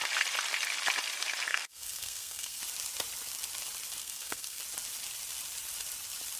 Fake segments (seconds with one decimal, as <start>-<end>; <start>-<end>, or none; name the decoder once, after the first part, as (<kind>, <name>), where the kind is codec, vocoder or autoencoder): 1.5-2.6 (codec, SNAC); 4.0-4.6